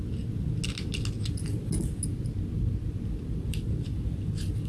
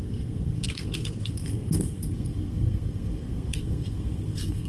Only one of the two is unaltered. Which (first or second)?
first